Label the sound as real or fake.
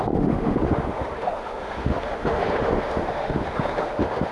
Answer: fake